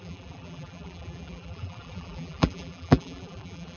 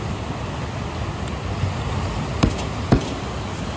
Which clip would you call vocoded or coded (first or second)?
first